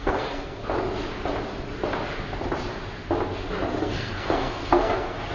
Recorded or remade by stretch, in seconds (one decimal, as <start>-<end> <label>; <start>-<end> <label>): 0.0-0.6 remade; 0.6-3.8 recorded; 3.8-5.3 remade